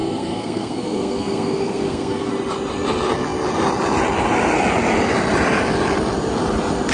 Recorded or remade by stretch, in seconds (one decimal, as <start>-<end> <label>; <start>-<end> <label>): 0.0-2.3 remade; 2.3-6.9 recorded